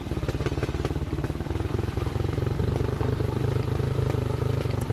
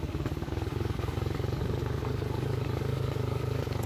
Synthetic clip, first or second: second